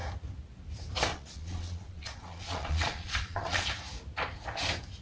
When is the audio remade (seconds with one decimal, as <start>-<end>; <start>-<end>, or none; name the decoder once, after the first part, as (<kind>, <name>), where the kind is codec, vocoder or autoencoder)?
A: 1.1-3.7 (vocoder, Vocos)